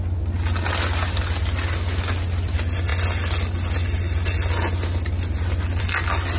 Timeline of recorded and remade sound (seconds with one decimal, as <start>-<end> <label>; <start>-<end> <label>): 0.0-6.4 recorded